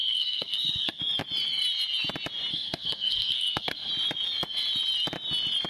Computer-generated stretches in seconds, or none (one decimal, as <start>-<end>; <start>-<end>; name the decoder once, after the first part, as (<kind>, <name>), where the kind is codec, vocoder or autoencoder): 0.0-1.0 (codec, SNAC); 2.5-3.9